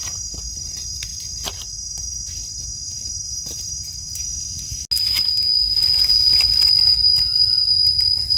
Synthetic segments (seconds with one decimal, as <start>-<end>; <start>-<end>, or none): 0.0-1.1; 2.9-4.3; 7.1-8.4